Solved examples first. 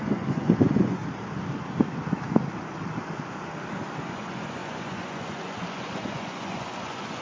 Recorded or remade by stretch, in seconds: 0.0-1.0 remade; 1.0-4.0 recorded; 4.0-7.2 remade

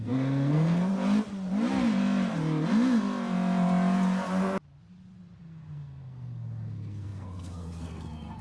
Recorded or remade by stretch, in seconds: 0.0-0.9 remade; 0.9-5.4 recorded; 5.4-8.4 remade